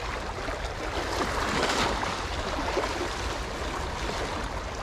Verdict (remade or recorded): recorded